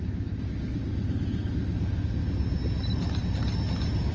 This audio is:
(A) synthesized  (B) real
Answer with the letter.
B